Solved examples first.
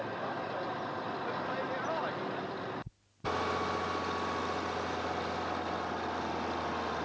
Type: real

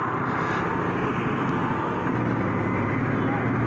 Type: real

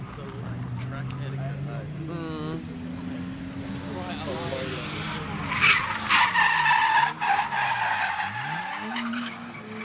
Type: real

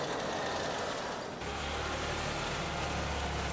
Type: real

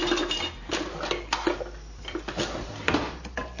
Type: real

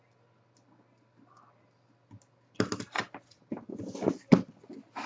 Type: real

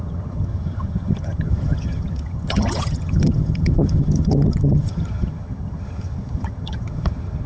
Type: fake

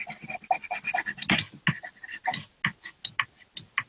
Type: real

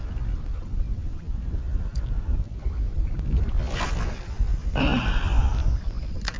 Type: real